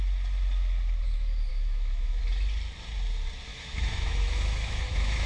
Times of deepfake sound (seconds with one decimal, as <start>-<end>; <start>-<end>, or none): 1.5-2.2; 3.5-5.3